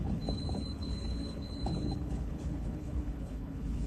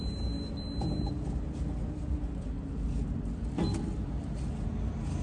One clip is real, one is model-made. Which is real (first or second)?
second